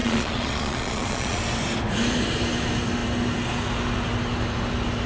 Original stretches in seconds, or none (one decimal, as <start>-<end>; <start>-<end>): 1.4-5.1